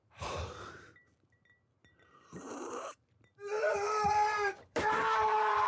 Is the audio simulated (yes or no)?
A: yes